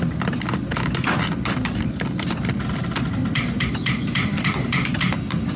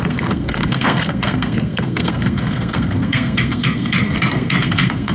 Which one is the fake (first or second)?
second